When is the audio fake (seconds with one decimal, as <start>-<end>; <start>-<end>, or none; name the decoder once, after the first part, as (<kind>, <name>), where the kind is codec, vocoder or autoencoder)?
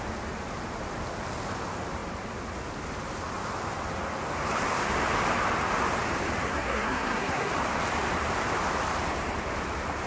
6.4-7.5 (codec, SNAC)